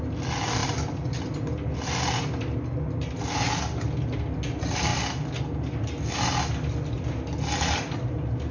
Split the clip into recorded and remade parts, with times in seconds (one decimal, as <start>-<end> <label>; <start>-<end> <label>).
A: 0.0-8.5 recorded